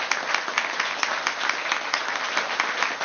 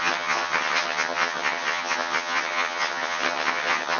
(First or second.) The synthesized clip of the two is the second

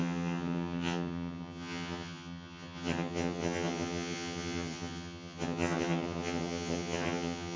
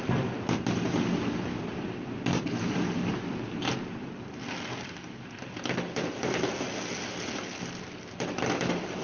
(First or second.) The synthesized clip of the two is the first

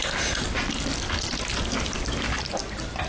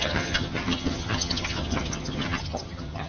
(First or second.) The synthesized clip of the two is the second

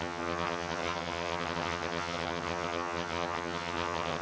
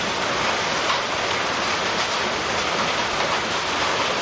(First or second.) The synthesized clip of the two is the first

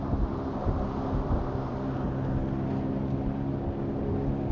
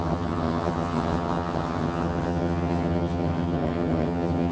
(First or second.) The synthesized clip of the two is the second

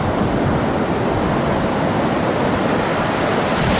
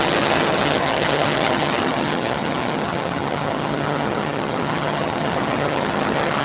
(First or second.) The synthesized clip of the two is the second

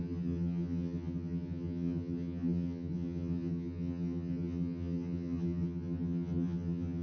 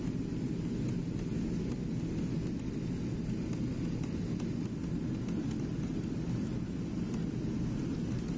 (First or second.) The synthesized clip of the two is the first